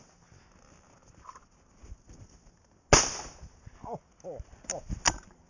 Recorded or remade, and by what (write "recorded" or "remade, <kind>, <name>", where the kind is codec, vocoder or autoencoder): recorded